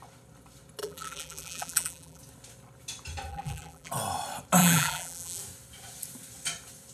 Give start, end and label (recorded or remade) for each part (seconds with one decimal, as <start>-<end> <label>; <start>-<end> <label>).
0.0-0.8 recorded; 0.8-2.2 remade; 2.2-3.3 recorded; 3.3-3.9 remade; 3.9-4.6 recorded; 4.6-5.4 remade; 5.4-6.9 recorded